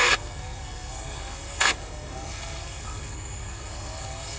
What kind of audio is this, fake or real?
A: fake